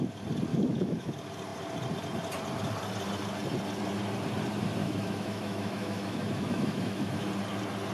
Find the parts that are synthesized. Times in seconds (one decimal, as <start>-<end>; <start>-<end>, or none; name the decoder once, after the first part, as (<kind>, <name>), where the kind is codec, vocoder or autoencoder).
0.5-1.1 (autoencoder, DAC-VAE); 4.8-7.3